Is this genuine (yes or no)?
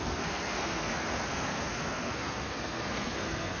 no